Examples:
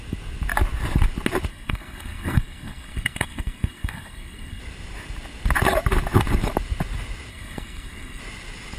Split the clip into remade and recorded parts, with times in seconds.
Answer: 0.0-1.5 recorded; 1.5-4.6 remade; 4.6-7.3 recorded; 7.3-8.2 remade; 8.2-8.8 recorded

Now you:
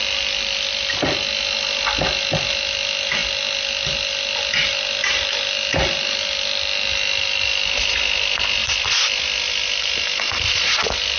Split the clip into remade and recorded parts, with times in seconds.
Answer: 0.0-11.2 recorded

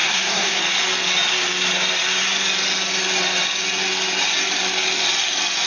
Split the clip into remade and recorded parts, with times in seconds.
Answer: 0.0-0.6 remade; 0.6-5.7 recorded

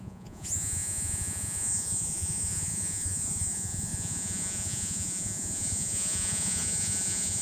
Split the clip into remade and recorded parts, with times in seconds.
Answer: 0.0-7.4 remade